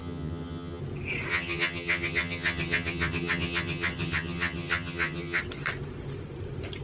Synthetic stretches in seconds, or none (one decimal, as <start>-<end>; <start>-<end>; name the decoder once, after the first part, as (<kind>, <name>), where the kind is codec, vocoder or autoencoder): 0.0-0.8 (vocoder, HiFi-GAN); 1.3-5.4